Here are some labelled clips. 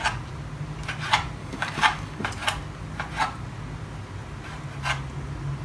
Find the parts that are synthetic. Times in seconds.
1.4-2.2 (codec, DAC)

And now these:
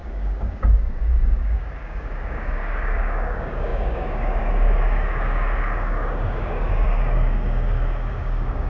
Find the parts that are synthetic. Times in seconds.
0.0-8.7 (codec, DAC)